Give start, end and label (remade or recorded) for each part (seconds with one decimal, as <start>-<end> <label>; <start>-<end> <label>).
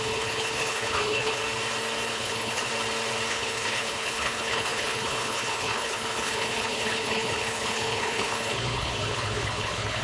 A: 0.0-1.4 remade; 1.4-2.1 recorded; 2.1-2.7 remade; 2.7-3.3 recorded; 3.3-10.0 remade